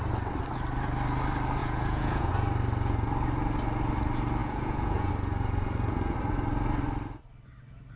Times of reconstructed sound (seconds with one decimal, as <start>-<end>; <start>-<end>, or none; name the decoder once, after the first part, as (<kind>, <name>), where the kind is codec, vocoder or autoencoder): 1.6-2.3 (vocoder, Vocos); 4.4-5.1